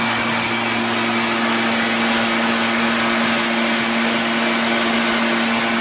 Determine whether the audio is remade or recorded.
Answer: recorded